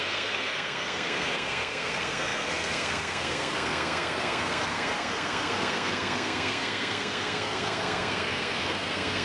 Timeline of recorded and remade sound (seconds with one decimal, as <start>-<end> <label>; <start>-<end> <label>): 0.0-9.2 remade